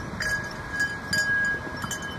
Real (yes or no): yes